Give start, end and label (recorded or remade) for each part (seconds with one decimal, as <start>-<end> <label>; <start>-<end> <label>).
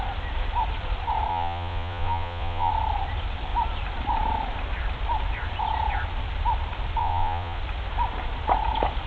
0.0-1.3 recorded; 1.3-2.7 remade; 2.7-7.0 recorded; 7.0-7.6 remade; 7.6-9.1 recorded